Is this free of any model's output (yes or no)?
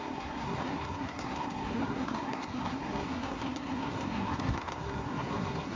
no